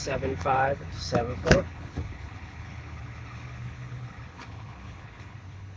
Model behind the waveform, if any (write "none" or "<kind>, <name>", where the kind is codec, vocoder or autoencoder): codec, HILCodec